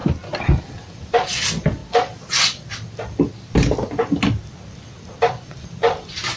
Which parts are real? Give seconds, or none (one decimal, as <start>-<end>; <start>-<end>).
0.0-0.6; 1.8-5.2